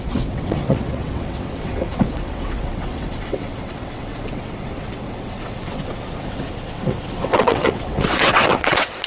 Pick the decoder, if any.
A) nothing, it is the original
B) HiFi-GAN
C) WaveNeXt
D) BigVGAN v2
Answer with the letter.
C